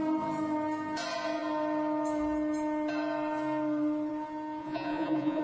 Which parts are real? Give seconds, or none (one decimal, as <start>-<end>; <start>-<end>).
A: 0.0-4.6